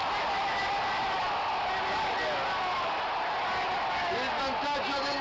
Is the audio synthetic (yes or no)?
no